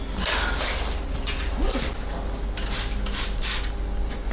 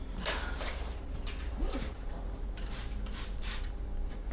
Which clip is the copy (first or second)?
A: second